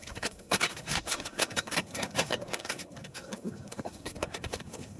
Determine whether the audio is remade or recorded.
remade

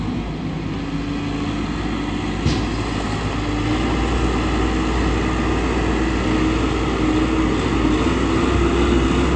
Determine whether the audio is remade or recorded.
recorded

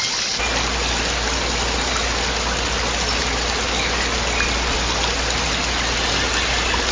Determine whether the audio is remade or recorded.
recorded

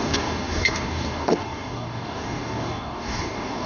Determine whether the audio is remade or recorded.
remade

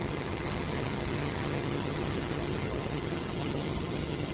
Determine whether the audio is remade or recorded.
remade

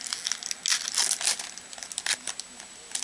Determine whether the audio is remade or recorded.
recorded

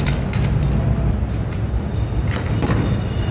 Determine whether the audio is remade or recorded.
remade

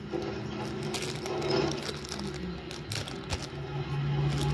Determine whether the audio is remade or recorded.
recorded